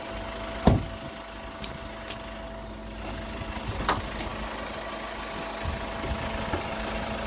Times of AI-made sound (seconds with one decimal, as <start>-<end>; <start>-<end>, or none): none